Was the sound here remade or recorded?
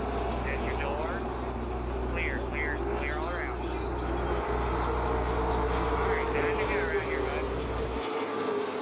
recorded